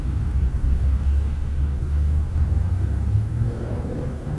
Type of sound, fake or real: fake